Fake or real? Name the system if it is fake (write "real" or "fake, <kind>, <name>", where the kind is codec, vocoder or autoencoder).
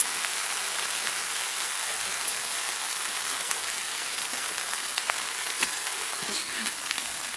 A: fake, codec, SNAC